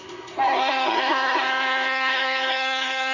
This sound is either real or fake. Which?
fake